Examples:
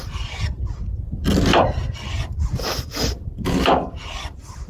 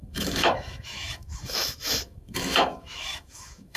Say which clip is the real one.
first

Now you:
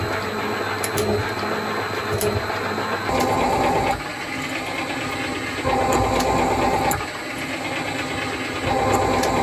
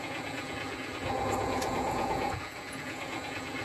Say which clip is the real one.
first